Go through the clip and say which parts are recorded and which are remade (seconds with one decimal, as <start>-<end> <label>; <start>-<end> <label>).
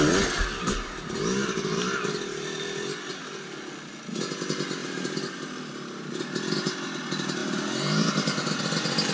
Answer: 0.0-4.8 recorded; 4.8-5.7 remade; 5.7-7.4 recorded; 7.4-8.6 remade; 8.6-9.1 recorded